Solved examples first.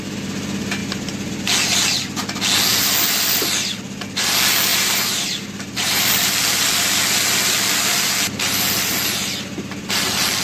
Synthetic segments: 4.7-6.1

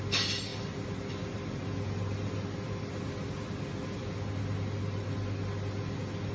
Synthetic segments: none

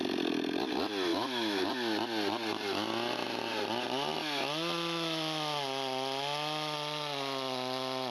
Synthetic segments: 1.1-1.7